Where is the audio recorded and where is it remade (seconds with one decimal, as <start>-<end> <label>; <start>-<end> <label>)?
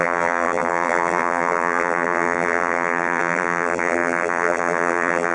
0.0-5.3 remade